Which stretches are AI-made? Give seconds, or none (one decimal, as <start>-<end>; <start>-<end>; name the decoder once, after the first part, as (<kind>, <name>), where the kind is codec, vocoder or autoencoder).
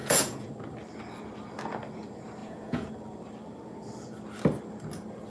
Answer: 0.0-0.5 (vocoder, Vocos); 2.4-2.9